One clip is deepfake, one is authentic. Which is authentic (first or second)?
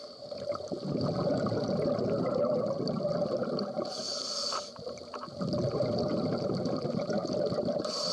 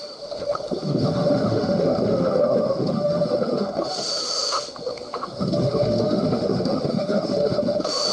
first